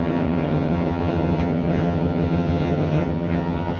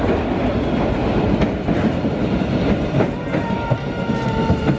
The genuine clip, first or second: second